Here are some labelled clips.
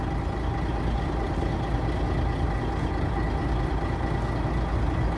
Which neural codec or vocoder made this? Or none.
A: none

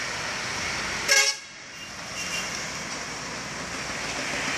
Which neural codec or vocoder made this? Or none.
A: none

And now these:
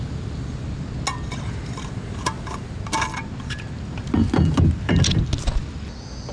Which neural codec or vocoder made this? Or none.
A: none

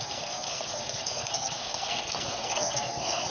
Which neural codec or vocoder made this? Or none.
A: codec, SNAC